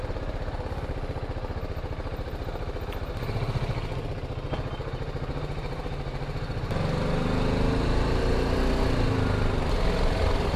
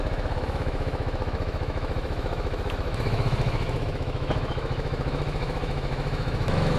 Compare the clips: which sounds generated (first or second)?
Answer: second